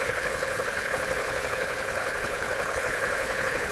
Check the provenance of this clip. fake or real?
fake